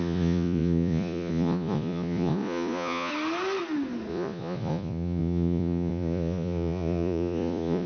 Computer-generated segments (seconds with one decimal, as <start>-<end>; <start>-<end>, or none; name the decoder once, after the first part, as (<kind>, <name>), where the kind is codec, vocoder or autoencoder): 0.0-3.1 (vocoder, Vocos); 4.1-7.9